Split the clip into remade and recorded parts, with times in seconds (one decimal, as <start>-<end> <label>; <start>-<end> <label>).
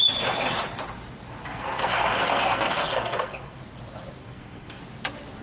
0.0-1.4 recorded; 1.4-3.6 remade; 3.6-4.2 recorded; 4.2-4.8 remade; 4.8-5.4 recorded